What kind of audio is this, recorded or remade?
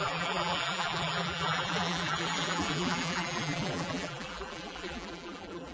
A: remade